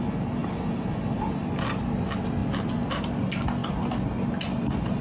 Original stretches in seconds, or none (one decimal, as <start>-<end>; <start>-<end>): 0.0-5.0